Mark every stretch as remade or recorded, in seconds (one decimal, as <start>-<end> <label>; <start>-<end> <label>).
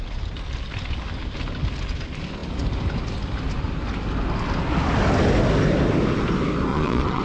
0.0-6.7 recorded; 6.7-7.2 remade